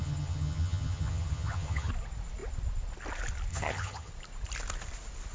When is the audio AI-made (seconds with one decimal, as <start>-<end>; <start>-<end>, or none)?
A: 0.0-1.9; 3.5-4.1